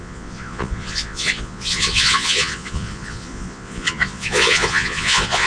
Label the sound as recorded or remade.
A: remade